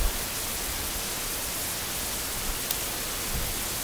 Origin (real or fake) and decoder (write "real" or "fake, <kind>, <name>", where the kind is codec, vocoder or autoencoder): real